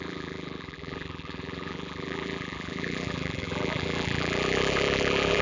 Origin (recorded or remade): remade